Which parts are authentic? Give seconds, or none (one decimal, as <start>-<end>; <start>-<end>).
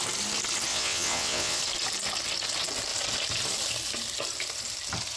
0.0-0.7; 1.6-5.2